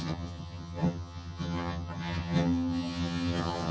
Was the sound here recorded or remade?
remade